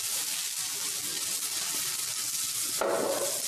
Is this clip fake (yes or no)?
no